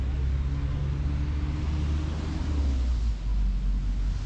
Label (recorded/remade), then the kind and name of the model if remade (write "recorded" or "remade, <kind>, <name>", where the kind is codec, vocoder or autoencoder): recorded